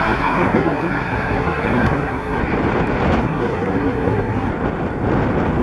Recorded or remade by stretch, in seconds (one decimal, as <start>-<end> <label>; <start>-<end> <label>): 0.0-2.4 remade; 2.4-3.2 recorded; 3.2-4.5 remade; 4.5-5.6 recorded

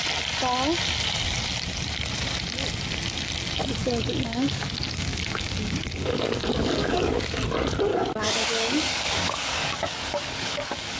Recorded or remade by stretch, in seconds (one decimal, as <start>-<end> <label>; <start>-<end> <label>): 0.0-3.8 recorded; 3.8-7.2 remade; 7.2-7.9 recorded; 7.9-11.0 remade

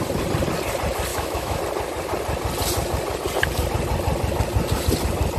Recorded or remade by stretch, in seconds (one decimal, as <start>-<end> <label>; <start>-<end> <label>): 0.0-1.1 recorded; 1.1-1.6 remade; 1.6-5.4 recorded

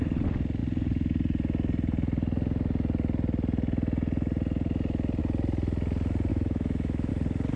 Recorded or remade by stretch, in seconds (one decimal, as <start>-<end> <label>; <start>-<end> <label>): 0.0-6.3 recorded; 6.3-7.1 remade; 7.1-7.6 recorded

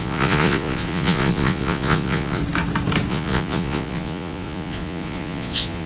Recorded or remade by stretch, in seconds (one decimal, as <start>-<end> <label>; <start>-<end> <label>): 0.0-2.4 remade; 2.4-3.1 recorded; 3.1-5.9 remade